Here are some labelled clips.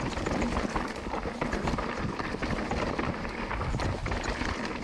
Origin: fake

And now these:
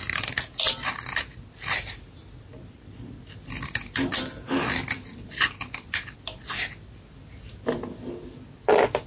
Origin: real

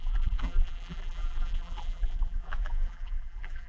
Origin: fake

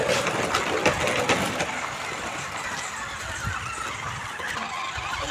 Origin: real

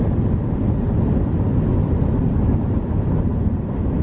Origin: fake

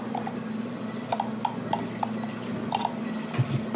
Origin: real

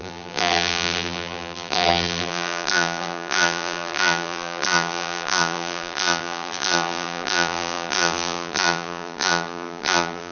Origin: fake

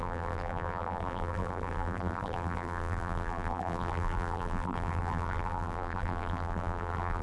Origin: fake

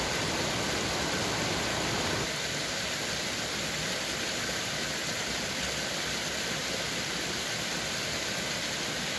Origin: real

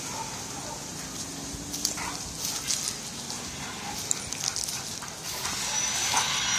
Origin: real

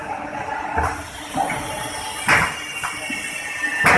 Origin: real